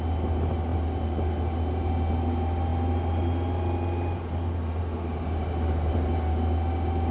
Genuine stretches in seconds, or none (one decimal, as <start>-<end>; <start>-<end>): 0.0-7.1